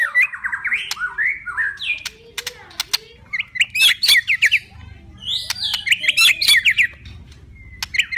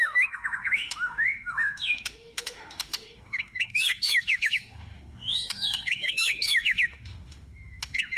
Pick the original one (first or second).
first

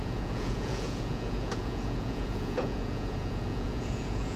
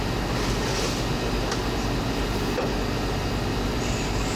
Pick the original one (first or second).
second